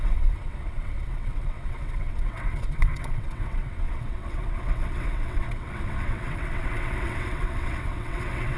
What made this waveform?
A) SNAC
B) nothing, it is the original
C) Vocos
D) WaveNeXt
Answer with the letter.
D